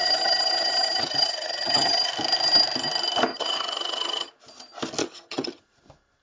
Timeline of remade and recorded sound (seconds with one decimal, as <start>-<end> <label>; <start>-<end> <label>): 0.0-2.1 remade; 2.1-3.3 recorded; 3.3-4.3 remade; 4.3-5.0 recorded; 5.0-5.6 remade; 5.6-6.2 recorded